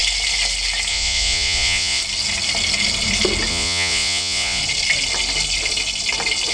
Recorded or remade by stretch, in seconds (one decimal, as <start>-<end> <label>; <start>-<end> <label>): 0.0-0.9 recorded; 0.9-2.0 remade; 2.0-3.5 recorded; 3.5-4.6 remade; 4.6-6.5 recorded